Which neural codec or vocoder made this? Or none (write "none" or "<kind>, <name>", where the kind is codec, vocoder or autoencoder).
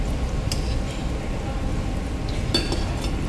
none